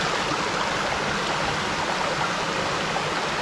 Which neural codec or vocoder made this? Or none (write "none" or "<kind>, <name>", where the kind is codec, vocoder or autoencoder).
none